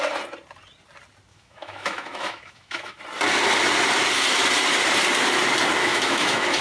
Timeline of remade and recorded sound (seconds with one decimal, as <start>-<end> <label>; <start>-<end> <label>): 0.0-1.3 recorded; 1.3-3.0 remade; 3.0-5.8 recorded; 5.8-6.6 remade